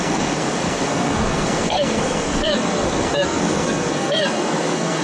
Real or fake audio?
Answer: fake